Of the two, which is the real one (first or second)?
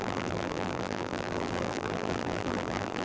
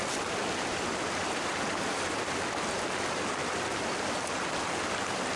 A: second